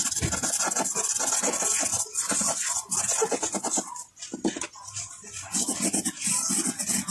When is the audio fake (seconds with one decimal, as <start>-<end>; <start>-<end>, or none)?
none